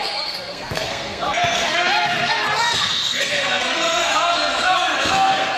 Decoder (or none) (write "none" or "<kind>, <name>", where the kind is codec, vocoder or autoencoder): codec, SNAC